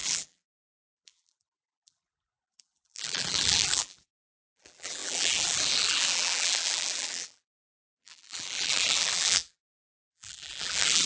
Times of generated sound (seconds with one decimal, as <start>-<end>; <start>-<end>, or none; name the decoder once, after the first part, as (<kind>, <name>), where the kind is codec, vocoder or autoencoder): 0.0-11.1 (vocoder, BigVGAN v2)